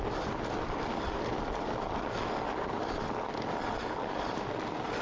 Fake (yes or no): no